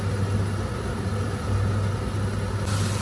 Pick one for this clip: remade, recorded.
recorded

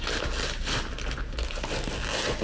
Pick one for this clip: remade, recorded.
recorded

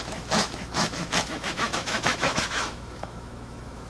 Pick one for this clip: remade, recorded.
remade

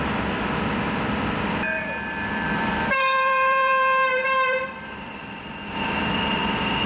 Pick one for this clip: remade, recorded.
remade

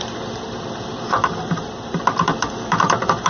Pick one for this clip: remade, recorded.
remade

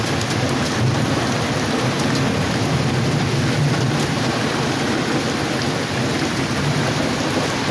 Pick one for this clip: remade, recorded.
recorded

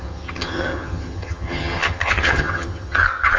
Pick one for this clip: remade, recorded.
remade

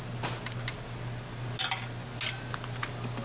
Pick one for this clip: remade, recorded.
recorded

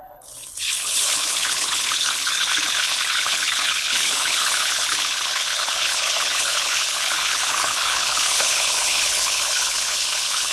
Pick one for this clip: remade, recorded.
remade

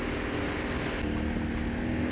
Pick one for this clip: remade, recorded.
recorded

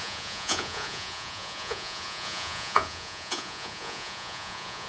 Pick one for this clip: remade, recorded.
remade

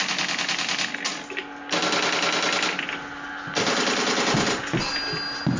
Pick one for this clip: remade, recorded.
recorded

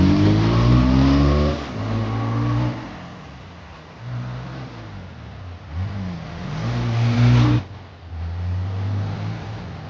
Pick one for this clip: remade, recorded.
recorded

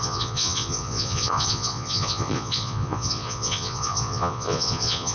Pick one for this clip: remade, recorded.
remade